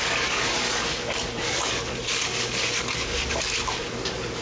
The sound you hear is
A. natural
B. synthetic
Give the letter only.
B